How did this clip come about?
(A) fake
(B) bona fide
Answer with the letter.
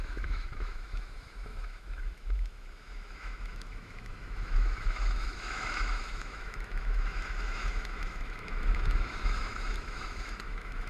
A